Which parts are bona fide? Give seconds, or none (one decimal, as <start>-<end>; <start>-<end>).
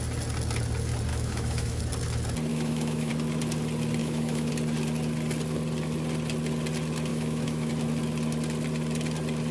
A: 0.0-1.1; 1.8-2.5; 3.1-4.0; 4.5-7.1; 7.7-9.5